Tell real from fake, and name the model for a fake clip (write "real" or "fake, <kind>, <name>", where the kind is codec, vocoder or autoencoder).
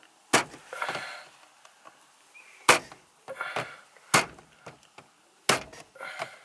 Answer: real